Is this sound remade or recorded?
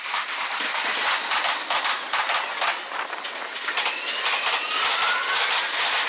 recorded